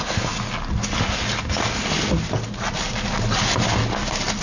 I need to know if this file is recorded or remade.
recorded